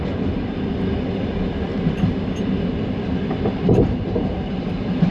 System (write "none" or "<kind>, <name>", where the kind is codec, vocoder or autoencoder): vocoder, BigVGAN v2